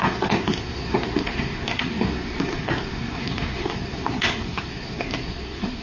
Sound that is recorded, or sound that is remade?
remade